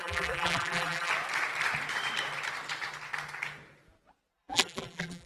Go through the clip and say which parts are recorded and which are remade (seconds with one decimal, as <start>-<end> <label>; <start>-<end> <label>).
0.0-1.1 remade; 1.1-4.3 recorded; 4.3-5.3 remade